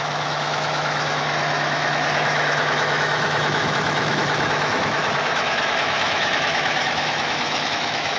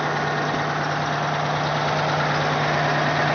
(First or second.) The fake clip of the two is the first